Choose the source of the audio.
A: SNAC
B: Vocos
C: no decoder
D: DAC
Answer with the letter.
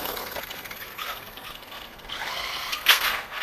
A